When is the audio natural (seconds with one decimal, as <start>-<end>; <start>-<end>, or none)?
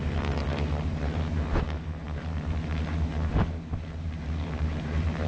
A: none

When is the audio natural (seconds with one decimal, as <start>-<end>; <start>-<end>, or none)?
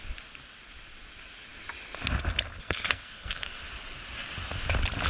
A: 0.0-2.6; 3.6-5.1